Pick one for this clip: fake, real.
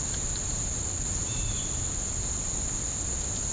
real